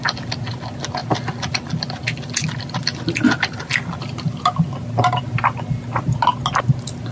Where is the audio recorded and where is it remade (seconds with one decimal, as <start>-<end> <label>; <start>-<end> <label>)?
0.0-7.1 recorded